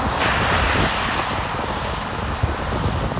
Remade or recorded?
recorded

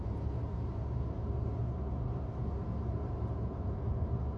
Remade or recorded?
recorded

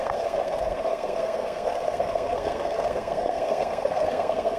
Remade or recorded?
remade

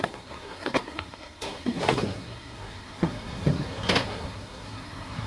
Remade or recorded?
remade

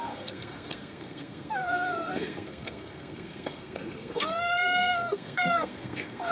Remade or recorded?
remade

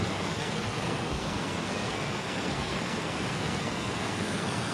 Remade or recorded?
remade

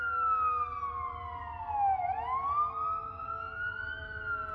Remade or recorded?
recorded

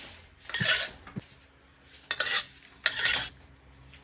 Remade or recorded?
recorded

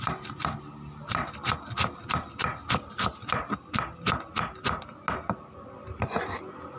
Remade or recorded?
recorded